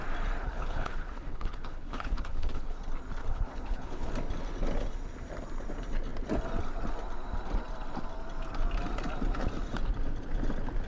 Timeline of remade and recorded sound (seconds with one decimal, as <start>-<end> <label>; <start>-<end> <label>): 0.0-0.4 recorded; 0.4-2.8 remade; 2.8-3.2 recorded; 3.2-4.1 remade; 4.1-10.9 recorded